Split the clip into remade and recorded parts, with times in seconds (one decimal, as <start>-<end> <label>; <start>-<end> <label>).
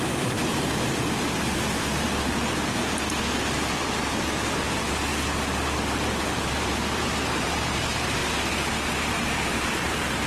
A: 0.0-5.1 remade; 5.1-6.2 recorded; 6.2-8.2 remade; 8.2-9.0 recorded; 9.0-10.3 remade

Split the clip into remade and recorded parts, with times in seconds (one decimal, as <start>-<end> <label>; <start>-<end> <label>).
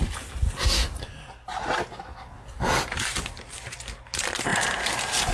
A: 0.0-5.3 recorded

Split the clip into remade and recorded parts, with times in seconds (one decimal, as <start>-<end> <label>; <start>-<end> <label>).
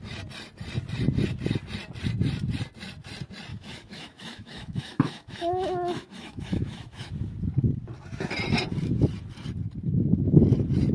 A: 0.0-3.5 recorded; 3.5-7.1 remade; 7.1-10.9 recorded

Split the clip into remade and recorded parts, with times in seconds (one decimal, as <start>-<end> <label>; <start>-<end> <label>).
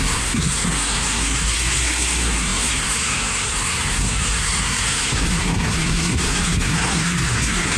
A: 0.0-7.8 remade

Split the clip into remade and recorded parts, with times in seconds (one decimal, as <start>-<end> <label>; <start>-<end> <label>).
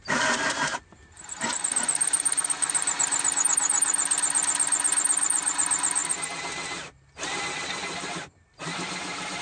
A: 0.0-9.4 recorded